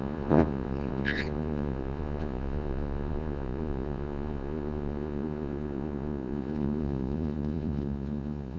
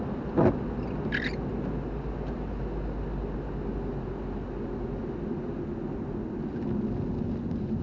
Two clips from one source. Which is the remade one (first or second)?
first